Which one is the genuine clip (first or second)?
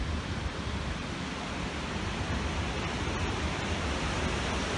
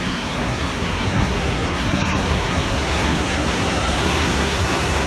first